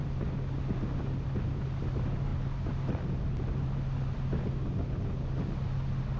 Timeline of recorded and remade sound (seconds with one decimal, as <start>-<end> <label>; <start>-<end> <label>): 0.0-6.2 recorded